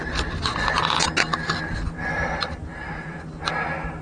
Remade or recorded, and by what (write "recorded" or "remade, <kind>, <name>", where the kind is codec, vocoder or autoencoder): recorded